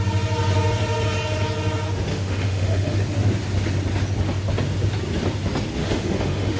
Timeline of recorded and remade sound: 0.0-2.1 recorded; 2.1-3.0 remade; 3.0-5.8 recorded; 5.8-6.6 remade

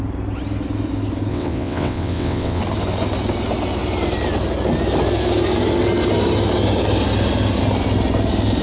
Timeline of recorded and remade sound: 0.0-1.3 recorded; 1.3-2.6 remade; 2.6-8.6 recorded

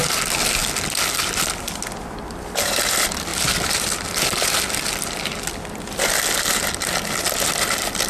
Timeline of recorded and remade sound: 0.0-3.3 recorded; 3.3-5.2 remade; 5.2-8.1 recorded

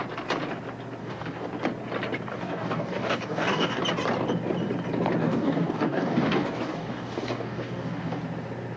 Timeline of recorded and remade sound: 0.0-1.0 recorded; 1.0-1.5 remade; 1.5-2.3 recorded; 2.3-3.8 remade; 3.8-5.2 recorded; 5.2-8.2 remade; 8.2-8.8 recorded

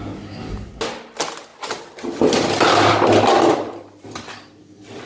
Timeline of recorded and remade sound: 0.0-5.1 recorded

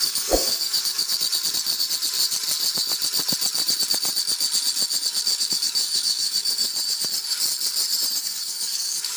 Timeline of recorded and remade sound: 0.0-1.1 remade; 1.1-5.4 recorded; 5.4-6.7 remade; 6.7-8.2 recorded; 8.2-9.2 remade

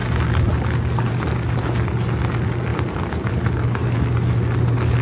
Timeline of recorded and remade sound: 0.0-5.0 recorded